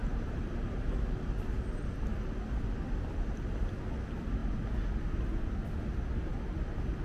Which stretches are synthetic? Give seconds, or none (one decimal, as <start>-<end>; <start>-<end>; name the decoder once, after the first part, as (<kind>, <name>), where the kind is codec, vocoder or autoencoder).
0.0-2.1 (vocoder, BigVGAN v2)